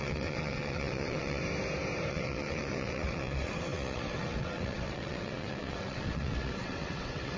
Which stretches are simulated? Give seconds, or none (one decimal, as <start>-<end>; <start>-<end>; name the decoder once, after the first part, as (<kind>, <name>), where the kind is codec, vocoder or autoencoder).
0.0-1.4 (vocoder, WaveNeXt); 2.1-7.4